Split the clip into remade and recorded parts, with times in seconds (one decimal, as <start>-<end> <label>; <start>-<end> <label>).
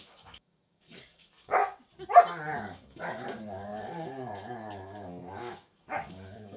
0.0-1.6 remade; 1.6-2.6 recorded; 2.6-6.6 remade